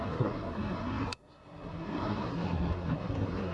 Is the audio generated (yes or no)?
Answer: yes